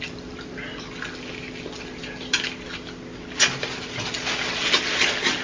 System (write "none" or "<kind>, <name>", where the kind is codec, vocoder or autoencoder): none